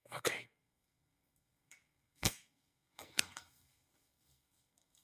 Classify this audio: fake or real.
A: fake